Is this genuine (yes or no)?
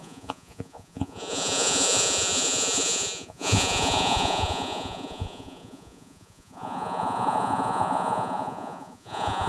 no